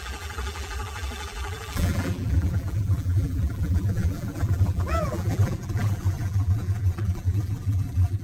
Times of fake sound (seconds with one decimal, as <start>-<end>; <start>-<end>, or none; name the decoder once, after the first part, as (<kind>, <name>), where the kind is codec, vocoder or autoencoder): 0.0-8.2 (vocoder, BigVGAN v2)